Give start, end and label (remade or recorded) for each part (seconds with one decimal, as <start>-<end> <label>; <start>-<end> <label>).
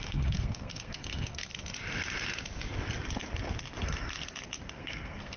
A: 0.0-1.5 remade; 1.5-4.7 recorded; 4.7-5.4 remade